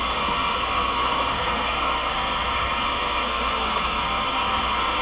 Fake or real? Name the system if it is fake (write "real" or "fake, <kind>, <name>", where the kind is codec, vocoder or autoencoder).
fake, codec, SNAC